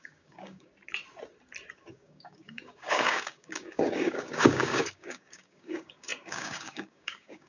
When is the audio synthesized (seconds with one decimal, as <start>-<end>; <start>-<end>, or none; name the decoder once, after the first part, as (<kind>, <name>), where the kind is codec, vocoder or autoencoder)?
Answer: 0.0-0.7 (codec, DAC); 1.7-7.5